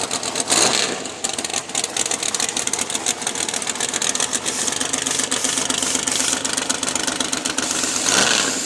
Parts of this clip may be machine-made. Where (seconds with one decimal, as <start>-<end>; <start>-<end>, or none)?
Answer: none